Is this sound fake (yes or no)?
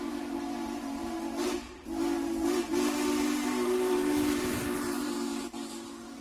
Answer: yes